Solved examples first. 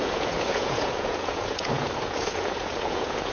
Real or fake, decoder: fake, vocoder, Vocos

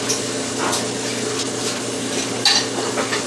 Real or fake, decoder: real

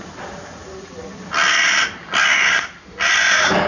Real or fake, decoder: real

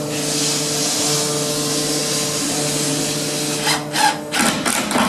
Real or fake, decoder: real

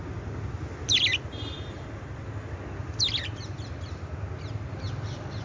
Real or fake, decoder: real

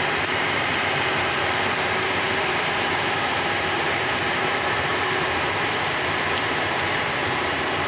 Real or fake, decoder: fake, vocoder, BigVGAN v2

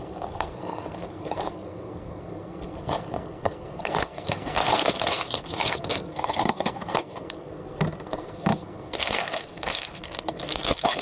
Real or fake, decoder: fake, codec, SNAC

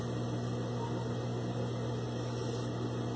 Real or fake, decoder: real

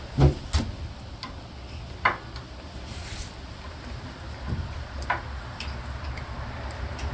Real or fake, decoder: real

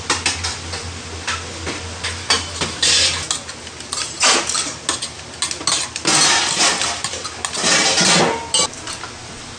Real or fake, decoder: real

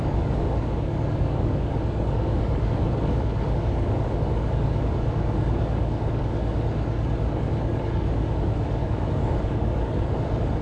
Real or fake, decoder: fake, codec, DAC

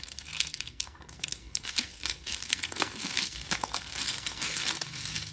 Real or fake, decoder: fake, codec, SNAC